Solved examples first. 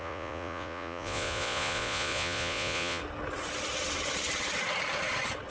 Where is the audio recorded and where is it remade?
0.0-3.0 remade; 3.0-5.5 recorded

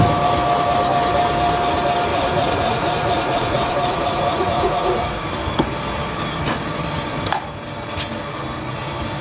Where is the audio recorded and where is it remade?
0.0-2.1 recorded; 2.1-5.2 remade; 5.2-9.2 recorded

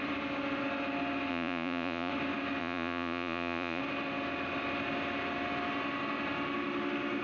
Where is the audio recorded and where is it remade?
0.0-1.3 recorded; 1.3-2.1 remade; 2.1-2.6 recorded; 2.6-3.8 remade; 3.8-7.2 recorded

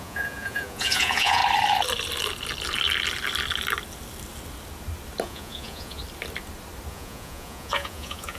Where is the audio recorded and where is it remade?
0.0-1.4 remade; 1.4-5.2 recorded; 5.2-6.0 remade; 6.0-6.9 recorded; 6.9-8.4 remade

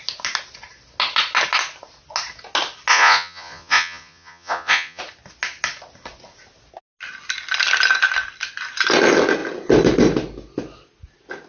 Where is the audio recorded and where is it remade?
0.0-2.9 recorded; 2.9-5.0 remade; 5.0-11.5 recorded